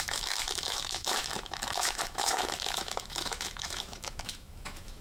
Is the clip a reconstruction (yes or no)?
yes